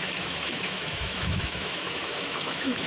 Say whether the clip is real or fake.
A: fake